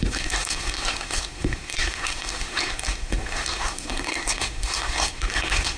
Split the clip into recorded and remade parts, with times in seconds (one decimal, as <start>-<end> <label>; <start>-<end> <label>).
0.0-5.8 remade